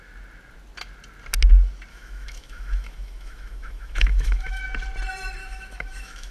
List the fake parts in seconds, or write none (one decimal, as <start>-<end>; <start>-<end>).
1.9-4.6; 5.4-6.3